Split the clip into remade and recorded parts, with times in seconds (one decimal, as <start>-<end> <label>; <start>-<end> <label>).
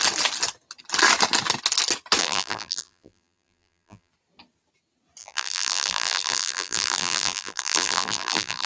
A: 0.0-2.2 recorded; 2.2-4.1 remade; 4.1-5.2 recorded; 5.2-8.7 remade